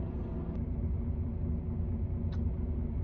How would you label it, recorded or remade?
recorded